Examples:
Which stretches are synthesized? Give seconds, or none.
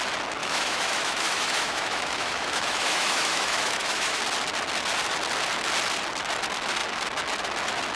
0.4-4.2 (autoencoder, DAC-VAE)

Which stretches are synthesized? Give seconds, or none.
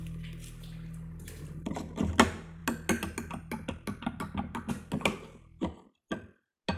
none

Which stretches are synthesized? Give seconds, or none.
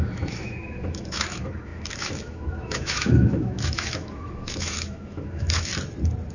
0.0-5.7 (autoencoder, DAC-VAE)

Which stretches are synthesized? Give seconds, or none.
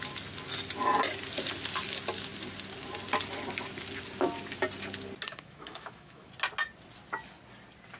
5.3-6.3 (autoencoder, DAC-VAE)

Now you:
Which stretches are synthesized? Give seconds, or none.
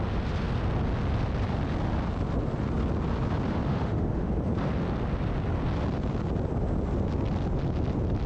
3.7-4.3 (autoencoder, DAC-VAE)